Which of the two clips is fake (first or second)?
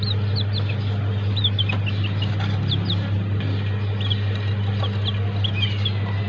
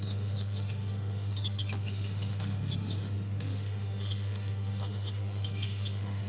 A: second